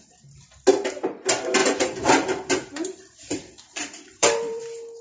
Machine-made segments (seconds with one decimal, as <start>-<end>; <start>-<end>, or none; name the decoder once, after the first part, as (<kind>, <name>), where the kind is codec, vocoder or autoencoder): 1.6-4.6 (vocoder, BigVGAN v2)